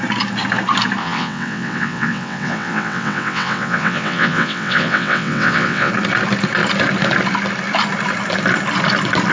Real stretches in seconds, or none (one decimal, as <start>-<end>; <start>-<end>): 0.0-1.0; 5.9-9.3